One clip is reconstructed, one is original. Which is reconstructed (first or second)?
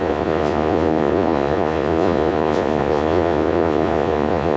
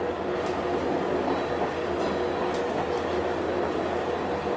first